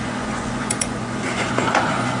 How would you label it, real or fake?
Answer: fake